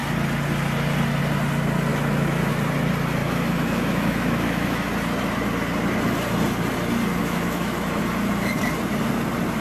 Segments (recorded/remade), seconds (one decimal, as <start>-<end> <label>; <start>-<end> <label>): 0.0-1.9 recorded; 1.9-2.5 remade; 2.5-3.2 recorded; 3.2-4.9 remade; 4.9-7.2 recorded; 7.2-8.0 remade; 8.0-9.6 recorded